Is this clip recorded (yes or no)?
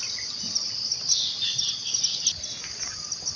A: yes